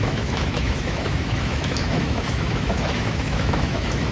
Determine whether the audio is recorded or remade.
remade